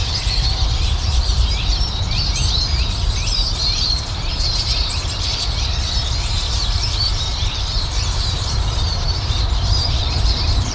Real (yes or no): no